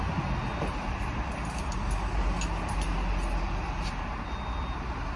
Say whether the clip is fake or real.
real